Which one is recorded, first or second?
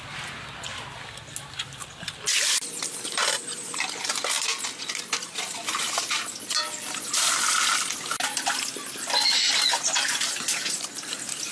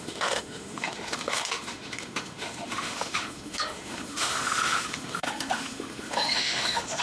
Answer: first